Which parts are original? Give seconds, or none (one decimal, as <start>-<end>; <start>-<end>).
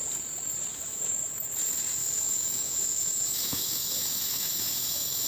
0.0-0.7; 1.3-2.0